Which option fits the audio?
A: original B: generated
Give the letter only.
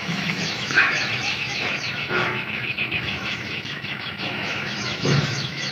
B